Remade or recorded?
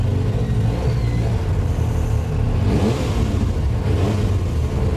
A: recorded